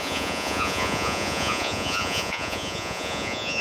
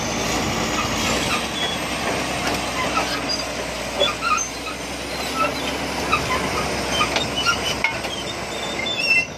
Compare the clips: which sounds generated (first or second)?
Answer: first